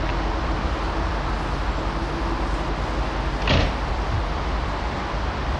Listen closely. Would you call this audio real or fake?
real